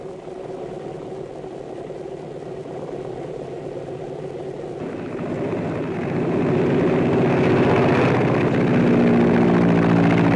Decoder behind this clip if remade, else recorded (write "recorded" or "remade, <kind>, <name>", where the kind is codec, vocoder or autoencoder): recorded